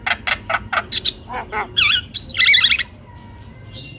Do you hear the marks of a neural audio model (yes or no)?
no